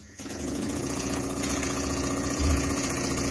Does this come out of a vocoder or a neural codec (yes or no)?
yes